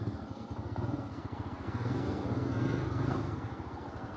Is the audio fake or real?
fake